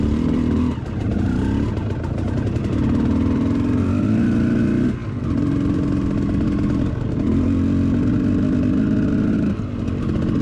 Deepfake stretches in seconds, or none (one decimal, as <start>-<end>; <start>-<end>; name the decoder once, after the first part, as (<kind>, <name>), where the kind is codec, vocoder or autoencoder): none